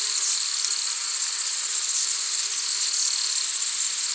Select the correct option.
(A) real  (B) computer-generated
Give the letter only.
A